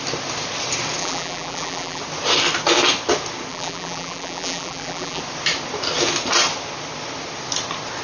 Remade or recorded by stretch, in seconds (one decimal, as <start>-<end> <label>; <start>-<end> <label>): 0.0-1.0 recorded; 1.0-2.0 remade; 2.0-3.5 recorded; 3.5-5.2 remade; 5.2-8.0 recorded